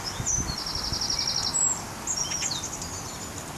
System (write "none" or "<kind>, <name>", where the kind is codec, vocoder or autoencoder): none